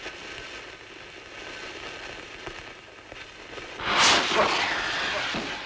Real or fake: real